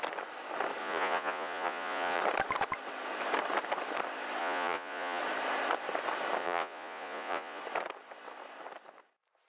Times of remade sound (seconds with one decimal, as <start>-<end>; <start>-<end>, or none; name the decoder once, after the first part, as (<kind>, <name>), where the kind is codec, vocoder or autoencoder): 0.8-2.2 (vocoder, Vocos); 4.4-5.2; 6.4-7.6